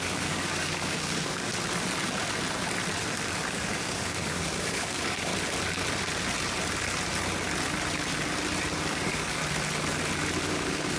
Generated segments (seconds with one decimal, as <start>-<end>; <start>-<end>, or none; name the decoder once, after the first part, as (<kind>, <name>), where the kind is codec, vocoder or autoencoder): 0.0-1.5 (codec, DAC); 3.5-5.3; 8.9-9.4; 10.4-11.0